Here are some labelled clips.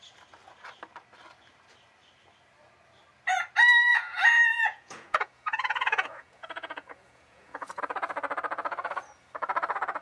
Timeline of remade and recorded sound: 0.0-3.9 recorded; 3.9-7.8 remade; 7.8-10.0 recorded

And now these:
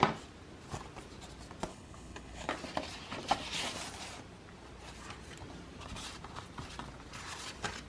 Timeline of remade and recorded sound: 0.0-1.7 recorded; 1.7-2.5 remade; 2.5-7.9 recorded

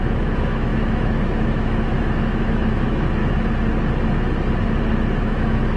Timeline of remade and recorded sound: 0.0-3.2 remade; 3.2-5.2 recorded; 5.2-5.8 remade

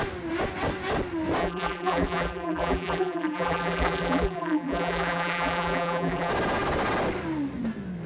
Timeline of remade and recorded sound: 0.0-1.4 recorded; 1.4-6.3 remade; 6.3-8.1 recorded